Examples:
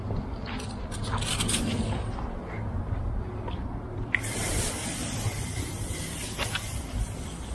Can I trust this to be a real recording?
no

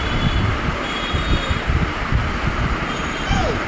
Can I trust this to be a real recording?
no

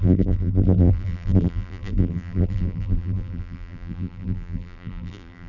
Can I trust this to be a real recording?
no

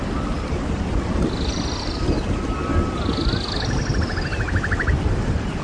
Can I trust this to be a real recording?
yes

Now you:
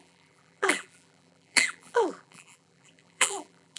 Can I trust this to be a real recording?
no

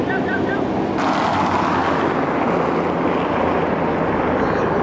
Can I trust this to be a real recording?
yes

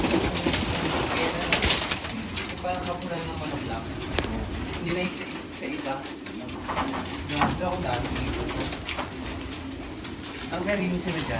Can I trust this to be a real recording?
no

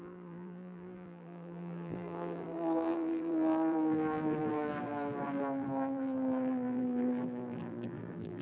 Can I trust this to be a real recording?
no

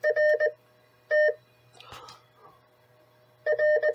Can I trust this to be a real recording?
yes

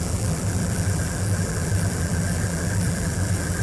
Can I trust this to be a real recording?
no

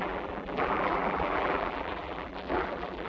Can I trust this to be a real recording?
no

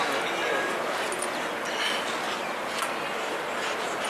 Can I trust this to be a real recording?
yes